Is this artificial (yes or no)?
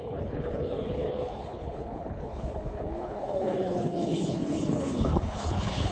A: yes